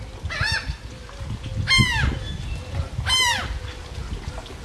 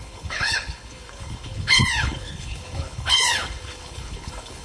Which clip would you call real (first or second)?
first